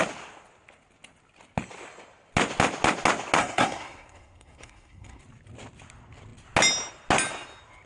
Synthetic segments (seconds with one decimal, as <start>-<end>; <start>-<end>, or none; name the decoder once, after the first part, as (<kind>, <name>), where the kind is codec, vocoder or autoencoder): 3.4-5.2 (codec, SNAC)